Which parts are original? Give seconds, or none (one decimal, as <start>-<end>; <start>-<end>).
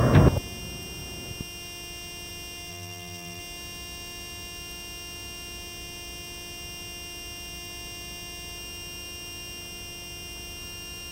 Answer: 0.0-2.7; 3.4-11.1